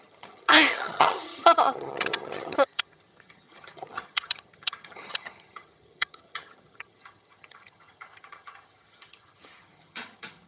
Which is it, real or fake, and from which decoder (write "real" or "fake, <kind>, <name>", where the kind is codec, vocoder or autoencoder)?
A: fake, vocoder, HiFi-GAN